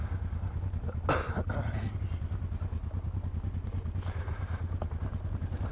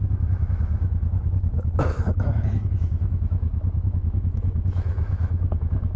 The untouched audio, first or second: first